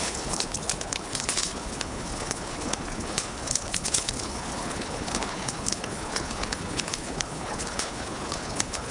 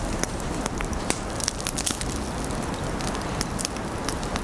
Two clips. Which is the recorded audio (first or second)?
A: second